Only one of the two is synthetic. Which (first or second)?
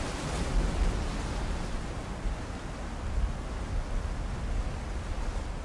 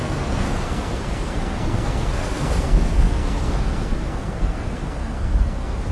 second